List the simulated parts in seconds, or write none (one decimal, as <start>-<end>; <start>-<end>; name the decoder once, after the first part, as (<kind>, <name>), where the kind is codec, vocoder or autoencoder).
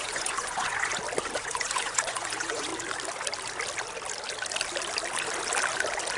0.0-0.9 (vocoder, Vocos); 1.4-2.7